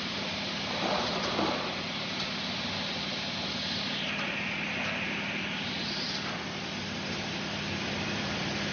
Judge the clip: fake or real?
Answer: real